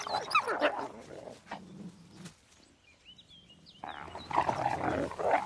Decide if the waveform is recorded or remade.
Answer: recorded